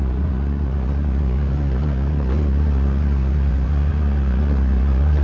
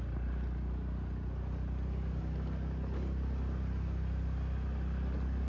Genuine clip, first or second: second